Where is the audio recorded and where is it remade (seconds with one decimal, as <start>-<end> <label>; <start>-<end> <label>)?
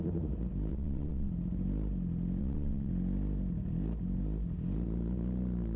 0.0-0.7 recorded; 0.7-1.3 remade; 1.3-2.4 recorded; 2.4-2.9 remade; 2.9-5.8 recorded